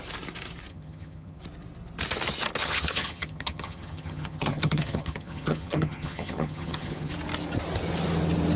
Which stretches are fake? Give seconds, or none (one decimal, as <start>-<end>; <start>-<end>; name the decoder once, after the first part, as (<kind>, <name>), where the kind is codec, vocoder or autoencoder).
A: 0.7-1.4 (vocoder, HiFi-GAN); 2.6-7.1